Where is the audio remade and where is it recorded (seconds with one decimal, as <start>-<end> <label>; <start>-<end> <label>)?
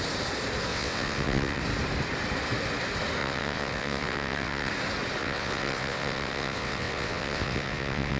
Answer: 0.0-0.7 recorded; 0.7-1.6 remade; 1.6-3.2 recorded; 3.2-4.7 remade; 4.7-5.2 recorded; 5.2-8.2 remade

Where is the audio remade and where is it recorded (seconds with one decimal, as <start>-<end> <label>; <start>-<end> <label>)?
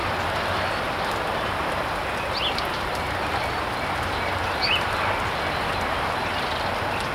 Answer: 0.0-7.1 recorded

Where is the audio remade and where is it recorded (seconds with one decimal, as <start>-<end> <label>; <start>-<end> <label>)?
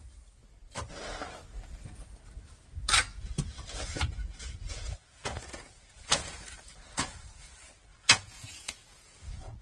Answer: 0.0-3.1 recorded; 3.1-7.5 remade; 7.5-7.9 recorded; 7.9-9.6 remade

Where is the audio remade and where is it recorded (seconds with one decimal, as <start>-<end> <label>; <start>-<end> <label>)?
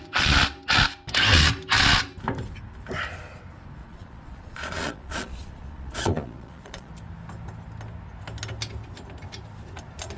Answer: 0.0-3.8 recorded; 3.8-6.9 remade; 6.9-10.2 recorded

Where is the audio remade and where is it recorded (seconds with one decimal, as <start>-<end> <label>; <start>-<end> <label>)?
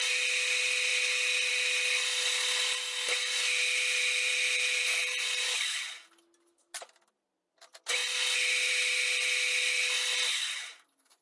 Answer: 0.0-11.2 recorded